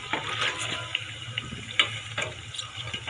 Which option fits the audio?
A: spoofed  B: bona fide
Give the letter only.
B